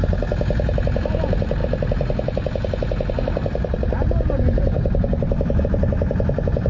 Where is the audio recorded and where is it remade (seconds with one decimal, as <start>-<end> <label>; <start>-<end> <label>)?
0.0-6.7 recorded